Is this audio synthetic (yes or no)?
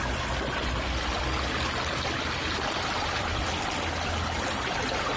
no